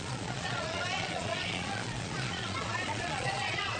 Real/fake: fake